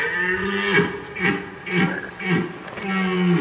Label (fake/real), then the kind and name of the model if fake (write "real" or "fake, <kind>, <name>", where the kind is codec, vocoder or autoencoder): real